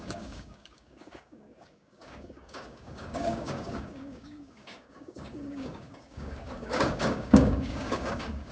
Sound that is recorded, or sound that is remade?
remade